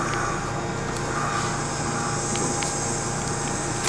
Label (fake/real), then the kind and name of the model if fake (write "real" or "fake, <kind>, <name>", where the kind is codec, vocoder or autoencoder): real